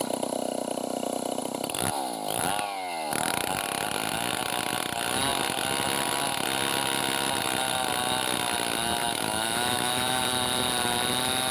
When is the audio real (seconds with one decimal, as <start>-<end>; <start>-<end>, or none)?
0.0-9.0; 10.2-11.5

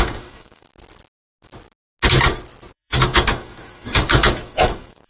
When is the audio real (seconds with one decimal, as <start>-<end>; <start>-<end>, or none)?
0.7-2.7

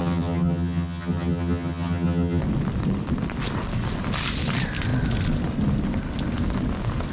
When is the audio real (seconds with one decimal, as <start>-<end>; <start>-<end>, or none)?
2.4-7.1

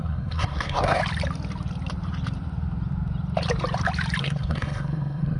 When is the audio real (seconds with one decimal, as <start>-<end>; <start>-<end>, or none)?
1.0-4.2

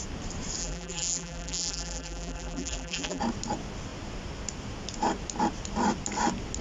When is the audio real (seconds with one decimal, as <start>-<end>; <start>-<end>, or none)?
0.0-0.6; 3.2-6.6

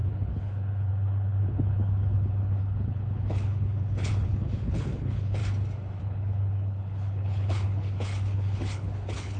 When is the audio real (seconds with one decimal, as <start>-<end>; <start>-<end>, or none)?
5.4-6.0